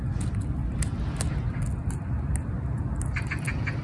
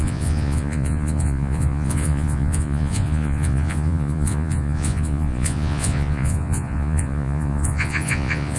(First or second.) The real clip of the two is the first